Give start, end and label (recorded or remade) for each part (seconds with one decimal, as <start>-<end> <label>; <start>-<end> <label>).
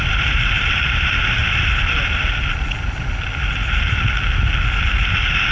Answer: 0.0-1.4 remade; 1.4-4.7 recorded; 4.7-5.5 remade